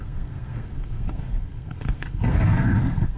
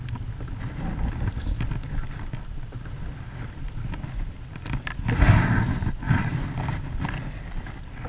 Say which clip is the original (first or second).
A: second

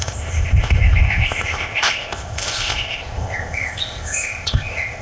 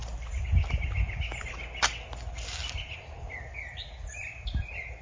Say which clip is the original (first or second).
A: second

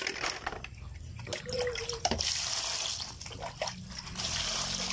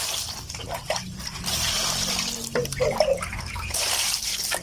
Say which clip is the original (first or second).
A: first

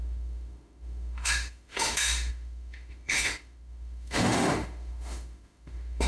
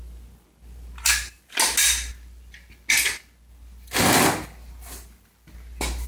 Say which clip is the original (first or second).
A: second